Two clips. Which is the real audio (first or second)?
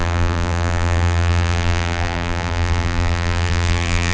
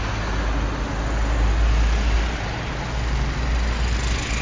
second